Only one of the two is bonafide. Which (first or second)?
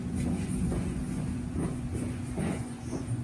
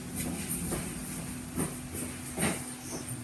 second